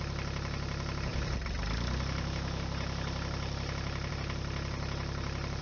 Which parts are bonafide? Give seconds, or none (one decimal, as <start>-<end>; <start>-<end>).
0.0-5.6